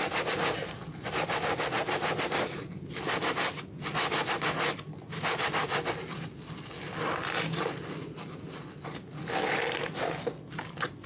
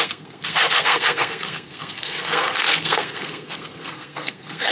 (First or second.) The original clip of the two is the first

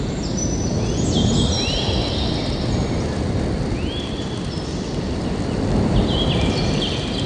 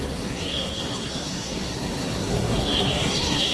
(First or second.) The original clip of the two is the first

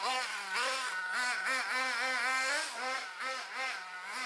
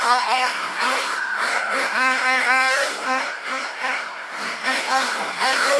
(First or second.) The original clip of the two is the first